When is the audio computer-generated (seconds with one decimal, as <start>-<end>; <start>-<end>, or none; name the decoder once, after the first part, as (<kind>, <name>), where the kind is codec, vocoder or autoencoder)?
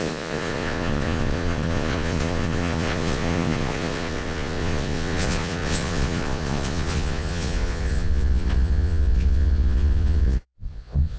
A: 0.0-11.2 (vocoder, Vocos)